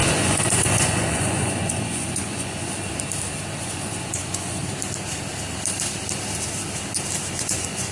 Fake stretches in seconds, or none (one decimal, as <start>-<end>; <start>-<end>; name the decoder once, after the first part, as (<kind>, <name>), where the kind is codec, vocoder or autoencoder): 0.0-2.7 (vocoder, Vocos); 3.6-4.6; 7.3-7.9